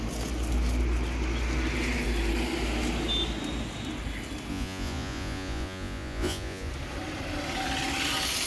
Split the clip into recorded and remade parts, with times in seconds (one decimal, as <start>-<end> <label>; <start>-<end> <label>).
0.0-4.5 recorded; 4.5-6.7 remade; 6.7-8.5 recorded